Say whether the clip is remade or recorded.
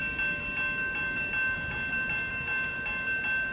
recorded